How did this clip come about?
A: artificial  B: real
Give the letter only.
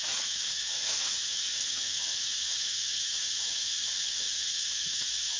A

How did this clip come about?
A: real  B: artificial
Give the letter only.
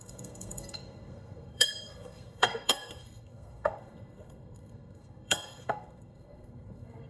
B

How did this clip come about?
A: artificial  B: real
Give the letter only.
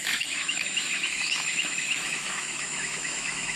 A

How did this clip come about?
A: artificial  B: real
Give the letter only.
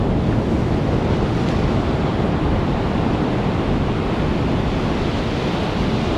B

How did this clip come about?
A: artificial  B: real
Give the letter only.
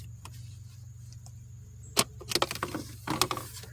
B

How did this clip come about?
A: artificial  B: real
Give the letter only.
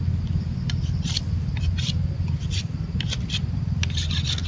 B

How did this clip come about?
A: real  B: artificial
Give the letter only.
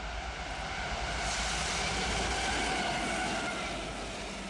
A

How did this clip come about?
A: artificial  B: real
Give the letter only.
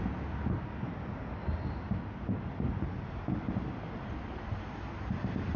B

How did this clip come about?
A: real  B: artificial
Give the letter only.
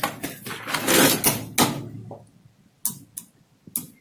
A